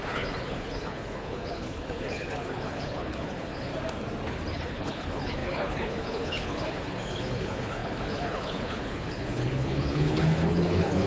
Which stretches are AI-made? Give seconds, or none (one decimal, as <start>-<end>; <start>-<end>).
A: 0.0-3.7; 4.5-11.1